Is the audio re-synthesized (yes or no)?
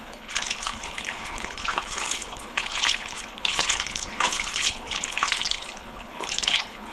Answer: yes